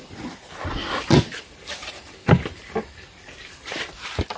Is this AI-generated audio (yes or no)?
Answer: no